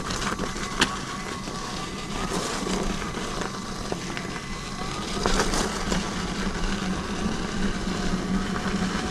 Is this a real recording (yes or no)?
yes